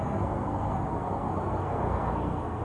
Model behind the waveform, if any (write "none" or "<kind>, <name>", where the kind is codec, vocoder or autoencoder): codec, SNAC